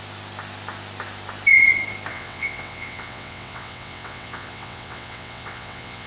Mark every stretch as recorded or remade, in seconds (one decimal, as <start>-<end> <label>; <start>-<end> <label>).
0.0-2.1 recorded; 2.1-6.1 remade

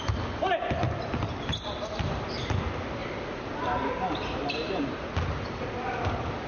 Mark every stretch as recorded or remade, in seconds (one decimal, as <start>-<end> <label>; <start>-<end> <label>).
0.0-6.5 recorded

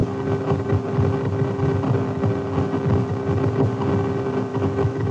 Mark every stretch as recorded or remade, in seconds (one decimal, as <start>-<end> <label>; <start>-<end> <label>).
0.0-4.5 recorded; 4.5-5.1 remade

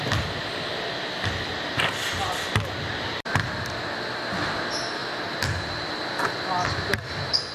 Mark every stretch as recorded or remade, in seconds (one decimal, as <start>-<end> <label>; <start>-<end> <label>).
0.0-5.0 recorded; 5.0-5.9 remade; 5.9-7.5 recorded

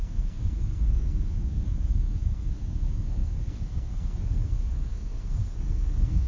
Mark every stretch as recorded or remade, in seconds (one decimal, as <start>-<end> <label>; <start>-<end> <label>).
0.0-6.3 remade

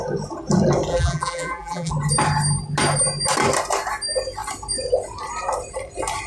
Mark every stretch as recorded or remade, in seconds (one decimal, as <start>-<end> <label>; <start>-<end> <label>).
0.0-0.9 recorded; 0.9-1.9 remade; 1.9-6.3 recorded

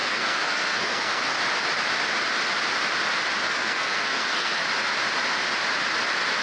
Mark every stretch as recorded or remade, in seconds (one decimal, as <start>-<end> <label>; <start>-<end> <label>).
0.0-1.4 remade; 1.4-3.5 recorded; 3.5-4.6 remade; 4.6-6.4 recorded